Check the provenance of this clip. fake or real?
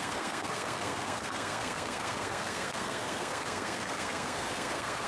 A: fake